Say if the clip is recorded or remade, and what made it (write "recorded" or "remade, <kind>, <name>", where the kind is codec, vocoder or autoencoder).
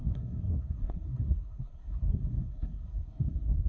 remade, codec, SNAC